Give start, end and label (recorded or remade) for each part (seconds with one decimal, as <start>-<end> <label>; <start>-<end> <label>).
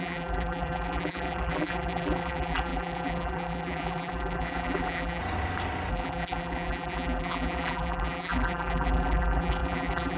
0.0-5.2 remade; 5.2-5.9 recorded; 5.9-10.2 remade